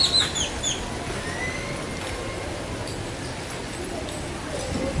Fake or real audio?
real